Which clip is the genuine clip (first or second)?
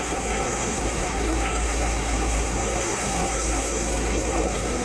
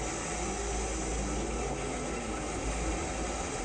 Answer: second